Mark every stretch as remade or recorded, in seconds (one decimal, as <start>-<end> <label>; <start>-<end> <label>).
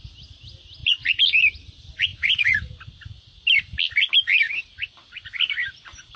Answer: 0.0-2.1 recorded; 2.1-2.7 remade; 2.7-6.2 recorded